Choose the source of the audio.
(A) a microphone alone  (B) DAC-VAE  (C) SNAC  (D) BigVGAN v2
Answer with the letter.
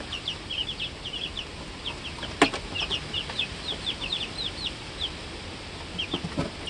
A